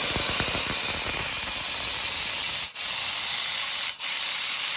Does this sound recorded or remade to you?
recorded